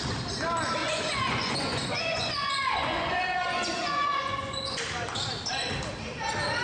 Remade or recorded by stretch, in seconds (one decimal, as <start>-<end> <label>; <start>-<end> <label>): 0.0-0.8 recorded; 0.8-4.8 remade; 4.8-6.6 recorded